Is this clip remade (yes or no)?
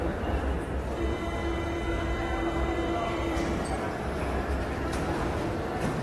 yes